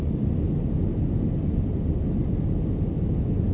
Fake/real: real